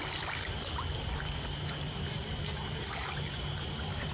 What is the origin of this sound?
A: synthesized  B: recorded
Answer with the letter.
B